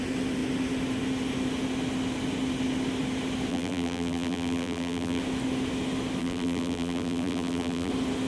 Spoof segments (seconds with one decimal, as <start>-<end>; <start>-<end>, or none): 3.5-5.2; 6.2-7.9